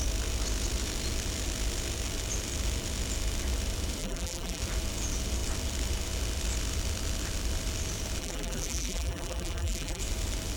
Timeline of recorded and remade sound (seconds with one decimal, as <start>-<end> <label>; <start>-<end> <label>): 0.0-4.0 recorded; 4.0-4.6 remade; 4.6-8.2 recorded; 8.2-10.0 remade; 10.0-10.6 recorded